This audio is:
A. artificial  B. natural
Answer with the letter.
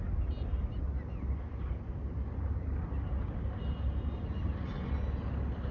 B